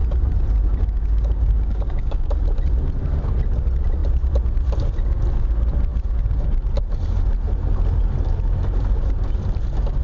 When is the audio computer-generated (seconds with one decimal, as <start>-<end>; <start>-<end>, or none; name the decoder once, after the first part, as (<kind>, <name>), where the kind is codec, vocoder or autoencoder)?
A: 1.0-2.3 (codec, DAC)